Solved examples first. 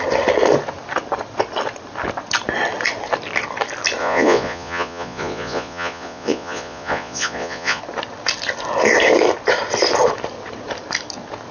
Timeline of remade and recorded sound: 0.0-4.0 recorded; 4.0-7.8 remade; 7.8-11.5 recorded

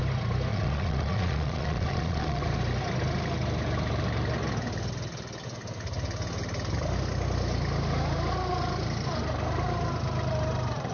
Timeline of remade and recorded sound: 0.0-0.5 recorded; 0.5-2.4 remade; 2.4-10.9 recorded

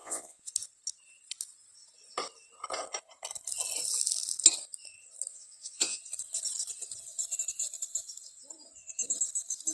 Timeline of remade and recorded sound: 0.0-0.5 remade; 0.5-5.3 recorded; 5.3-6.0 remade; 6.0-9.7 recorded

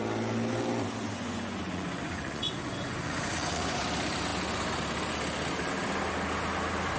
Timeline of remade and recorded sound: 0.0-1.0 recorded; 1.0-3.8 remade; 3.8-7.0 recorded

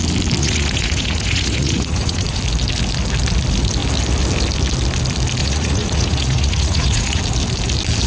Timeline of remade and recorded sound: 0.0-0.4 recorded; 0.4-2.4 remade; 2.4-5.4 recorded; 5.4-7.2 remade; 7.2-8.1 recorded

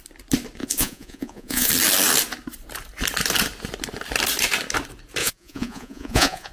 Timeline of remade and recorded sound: 0.0-0.6 recorded; 0.6-1.7 remade; 1.7-5.2 recorded; 5.2-6.5 remade